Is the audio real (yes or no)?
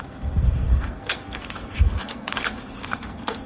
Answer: no